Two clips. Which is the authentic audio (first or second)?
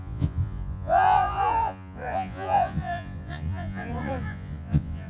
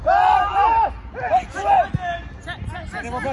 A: second